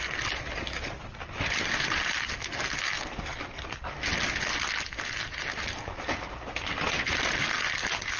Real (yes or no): yes